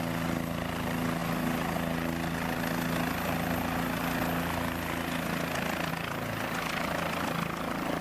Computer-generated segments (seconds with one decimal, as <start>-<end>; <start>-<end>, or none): none